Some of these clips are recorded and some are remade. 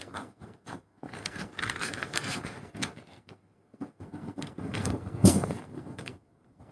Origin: remade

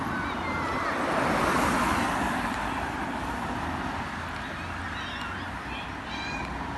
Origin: recorded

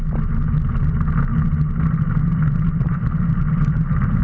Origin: recorded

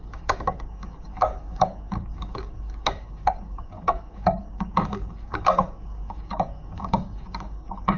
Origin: remade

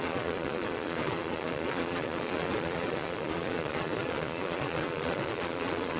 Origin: remade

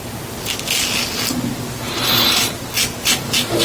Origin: recorded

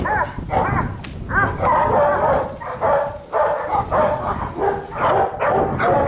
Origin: recorded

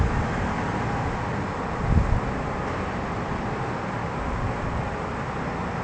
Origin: recorded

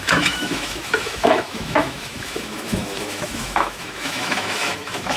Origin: remade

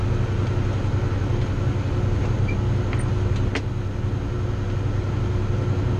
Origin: recorded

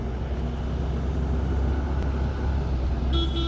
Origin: recorded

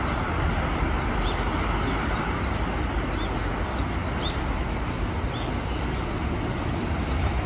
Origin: recorded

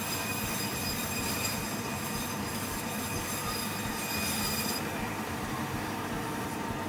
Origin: remade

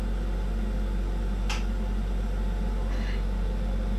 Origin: recorded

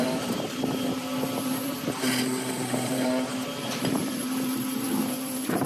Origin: remade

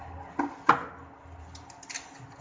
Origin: recorded